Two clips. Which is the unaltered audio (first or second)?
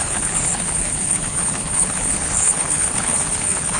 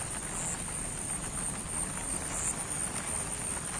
second